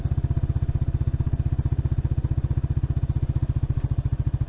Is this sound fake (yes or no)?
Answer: no